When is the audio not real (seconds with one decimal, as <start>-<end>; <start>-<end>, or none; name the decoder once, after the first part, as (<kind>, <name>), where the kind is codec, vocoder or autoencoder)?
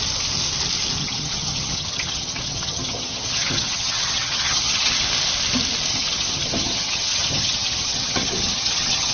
1.0-5.0 (vocoder, HiFi-GAN); 5.9-9.1